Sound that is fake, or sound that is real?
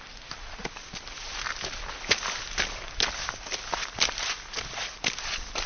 real